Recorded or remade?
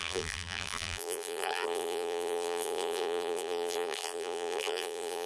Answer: remade